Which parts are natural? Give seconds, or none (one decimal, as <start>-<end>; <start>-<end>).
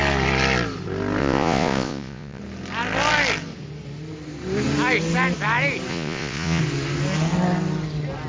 0.0-1.2; 2.4-5.9; 6.6-8.3